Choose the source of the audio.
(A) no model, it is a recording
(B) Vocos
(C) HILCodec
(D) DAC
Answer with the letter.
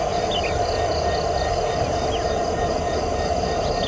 A